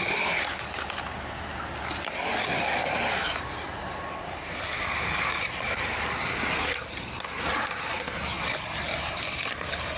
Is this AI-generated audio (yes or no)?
no